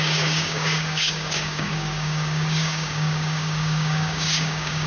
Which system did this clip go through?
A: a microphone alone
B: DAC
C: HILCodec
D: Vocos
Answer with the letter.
B